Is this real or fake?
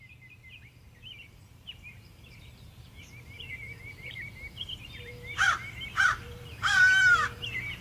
fake